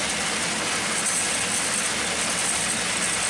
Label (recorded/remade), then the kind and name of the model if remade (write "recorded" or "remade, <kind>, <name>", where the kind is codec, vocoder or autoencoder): recorded